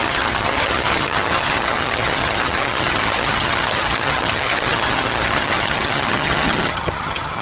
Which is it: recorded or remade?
remade